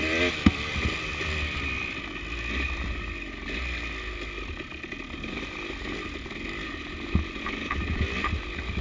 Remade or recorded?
recorded